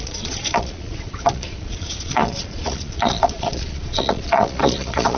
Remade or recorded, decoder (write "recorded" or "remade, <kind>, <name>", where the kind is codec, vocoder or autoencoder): remade, vocoder, Vocos